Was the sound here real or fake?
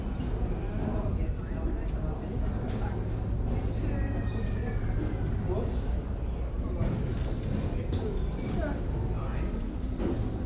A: real